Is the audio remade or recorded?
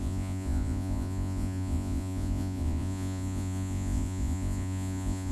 remade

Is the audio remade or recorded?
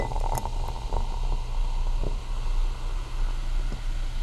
recorded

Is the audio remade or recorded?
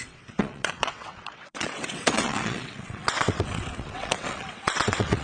remade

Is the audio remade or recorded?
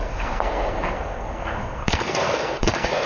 remade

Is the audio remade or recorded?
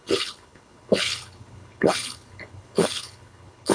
remade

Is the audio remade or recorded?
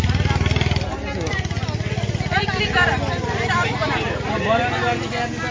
recorded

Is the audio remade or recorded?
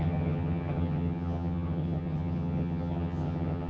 remade